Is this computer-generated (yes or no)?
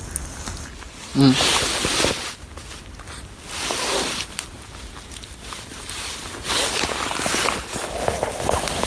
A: no